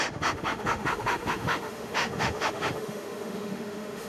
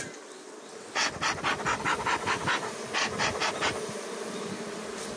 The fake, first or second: first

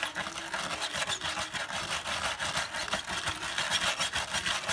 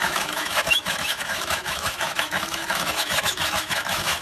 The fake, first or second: second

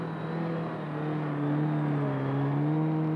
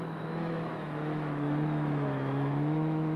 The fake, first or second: second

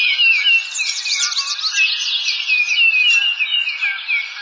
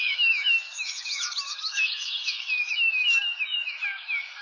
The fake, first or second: second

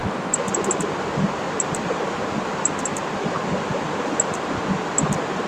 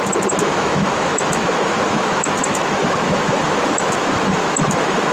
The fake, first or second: second